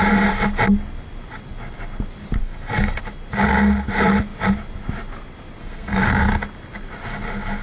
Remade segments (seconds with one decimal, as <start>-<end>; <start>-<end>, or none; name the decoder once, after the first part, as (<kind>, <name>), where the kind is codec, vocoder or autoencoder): 2.4-3.0 (codec, SNAC); 5.6-6.1